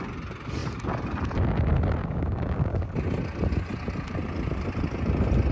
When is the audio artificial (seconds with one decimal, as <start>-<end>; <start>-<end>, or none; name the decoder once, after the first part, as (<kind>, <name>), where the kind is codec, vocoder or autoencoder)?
2.0-2.9 (codec, DAC)